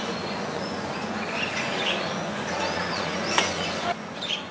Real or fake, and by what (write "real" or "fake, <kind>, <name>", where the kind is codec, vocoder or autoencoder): fake, vocoder, Vocos